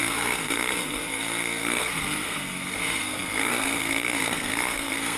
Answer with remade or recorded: remade